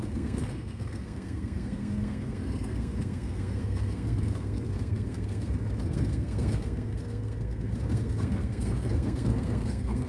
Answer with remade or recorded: remade